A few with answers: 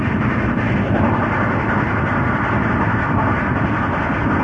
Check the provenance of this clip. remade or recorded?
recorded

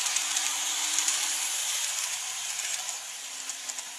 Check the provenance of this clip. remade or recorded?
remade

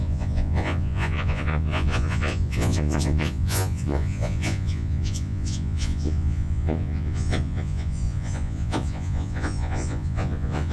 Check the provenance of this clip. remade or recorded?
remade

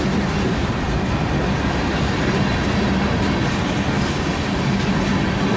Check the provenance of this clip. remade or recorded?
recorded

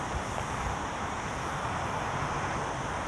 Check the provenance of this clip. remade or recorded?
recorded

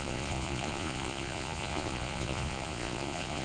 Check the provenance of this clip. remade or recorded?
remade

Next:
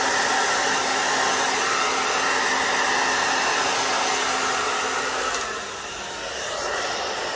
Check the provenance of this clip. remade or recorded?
recorded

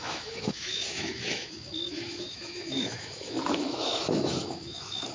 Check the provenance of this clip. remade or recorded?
remade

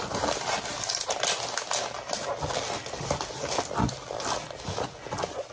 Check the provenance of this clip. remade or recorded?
recorded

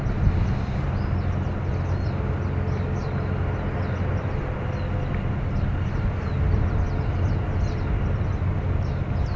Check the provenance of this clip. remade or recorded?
recorded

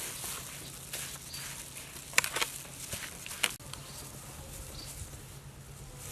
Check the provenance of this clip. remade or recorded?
recorded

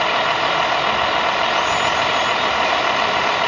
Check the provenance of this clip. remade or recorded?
recorded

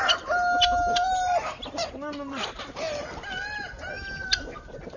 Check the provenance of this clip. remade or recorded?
recorded